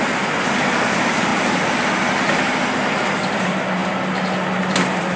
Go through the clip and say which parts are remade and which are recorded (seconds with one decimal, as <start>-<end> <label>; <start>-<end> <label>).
0.0-1.3 remade; 1.3-3.2 recorded; 3.2-3.8 remade; 3.8-4.7 recorded; 4.7-5.2 remade